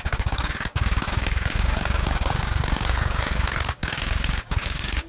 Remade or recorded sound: remade